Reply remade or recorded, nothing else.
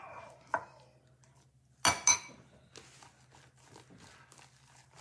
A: recorded